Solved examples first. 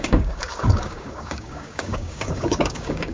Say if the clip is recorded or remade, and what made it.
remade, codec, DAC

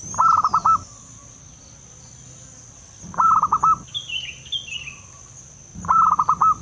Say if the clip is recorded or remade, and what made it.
recorded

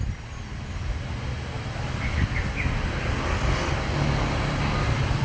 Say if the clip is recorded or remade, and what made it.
recorded